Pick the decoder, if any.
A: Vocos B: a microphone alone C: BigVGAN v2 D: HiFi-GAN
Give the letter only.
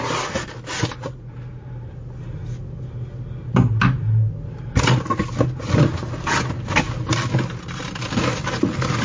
B